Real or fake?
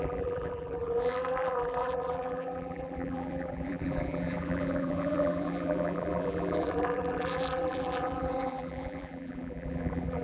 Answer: fake